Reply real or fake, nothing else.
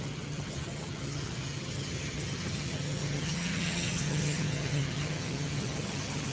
fake